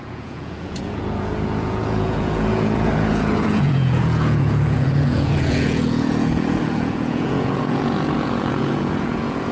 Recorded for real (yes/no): no